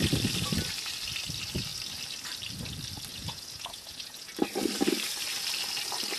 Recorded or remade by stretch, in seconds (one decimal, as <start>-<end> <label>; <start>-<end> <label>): 0.0-3.1 recorded; 3.1-4.3 remade; 4.3-6.2 recorded